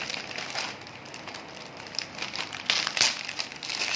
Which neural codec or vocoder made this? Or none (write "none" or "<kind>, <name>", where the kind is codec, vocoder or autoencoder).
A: none